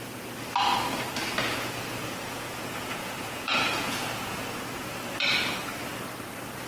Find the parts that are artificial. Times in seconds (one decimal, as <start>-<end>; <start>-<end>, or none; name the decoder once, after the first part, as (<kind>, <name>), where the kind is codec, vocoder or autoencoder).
1.5-4.5 (vocoder, Vocos)